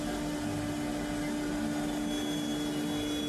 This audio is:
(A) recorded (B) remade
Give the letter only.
A